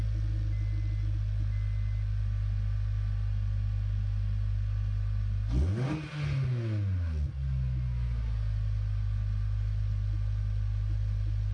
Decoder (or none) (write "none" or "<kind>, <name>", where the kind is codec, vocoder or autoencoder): none